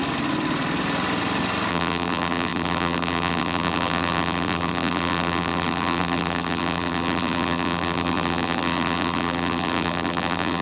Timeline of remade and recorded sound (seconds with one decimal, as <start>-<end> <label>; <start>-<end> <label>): 0.0-1.7 recorded; 1.7-10.6 remade